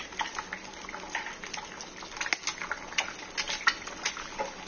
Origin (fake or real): real